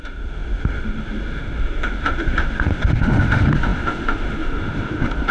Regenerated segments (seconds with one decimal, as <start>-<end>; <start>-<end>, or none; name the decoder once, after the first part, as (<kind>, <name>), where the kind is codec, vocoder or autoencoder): 0.0-5.3 (autoencoder, DAC-VAE)